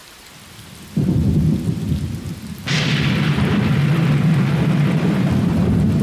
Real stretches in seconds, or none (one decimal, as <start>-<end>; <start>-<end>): 0.0-3.5